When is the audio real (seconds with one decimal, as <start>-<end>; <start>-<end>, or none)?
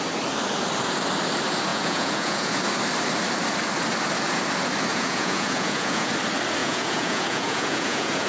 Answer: 0.0-1.7; 2.5-4.9; 6.1-6.6